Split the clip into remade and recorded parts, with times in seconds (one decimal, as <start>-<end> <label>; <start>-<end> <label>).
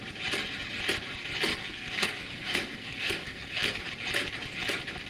0.0-1.5 recorded; 1.5-3.8 remade; 3.8-5.1 recorded